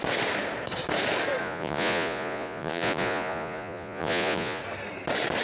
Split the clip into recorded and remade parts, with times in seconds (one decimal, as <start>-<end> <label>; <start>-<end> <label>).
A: 0.0-1.4 recorded; 1.4-4.6 remade; 4.6-5.4 recorded